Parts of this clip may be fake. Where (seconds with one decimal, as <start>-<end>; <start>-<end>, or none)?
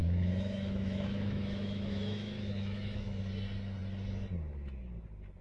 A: 0.0-3.2